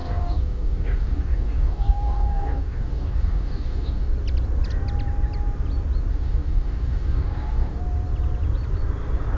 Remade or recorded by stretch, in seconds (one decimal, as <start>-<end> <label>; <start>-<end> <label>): 0.0-4.1 remade; 4.1-6.1 recorded; 6.1-7.8 remade; 7.8-9.4 recorded